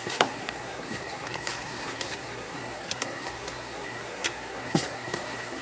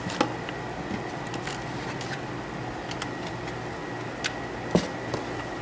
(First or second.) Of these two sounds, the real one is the second